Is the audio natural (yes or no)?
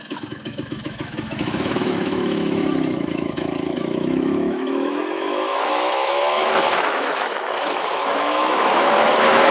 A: no